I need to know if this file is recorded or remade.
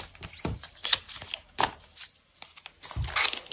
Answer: recorded